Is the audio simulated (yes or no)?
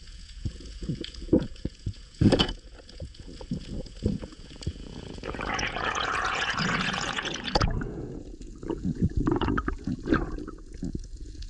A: yes